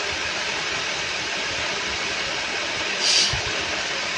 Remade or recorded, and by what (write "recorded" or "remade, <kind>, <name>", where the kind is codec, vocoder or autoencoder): recorded